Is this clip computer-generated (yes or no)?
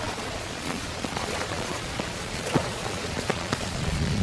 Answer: yes